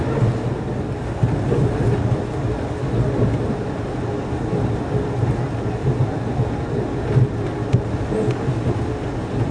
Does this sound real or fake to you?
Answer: real